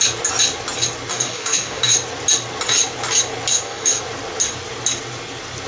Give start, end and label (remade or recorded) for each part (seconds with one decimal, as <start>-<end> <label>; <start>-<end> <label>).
0.0-1.1 recorded; 1.1-1.8 remade; 1.8-3.5 recorded; 3.5-4.0 remade; 4.0-5.7 recorded